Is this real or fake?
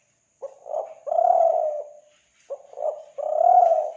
real